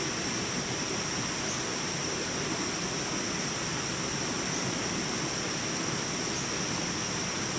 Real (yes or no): yes